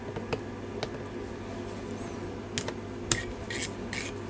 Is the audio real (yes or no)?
yes